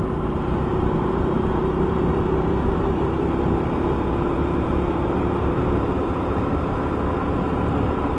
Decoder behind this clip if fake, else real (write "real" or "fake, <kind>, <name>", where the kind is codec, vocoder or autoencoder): fake, vocoder, BigVGAN v2